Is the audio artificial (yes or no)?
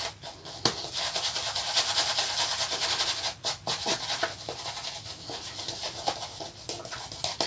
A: no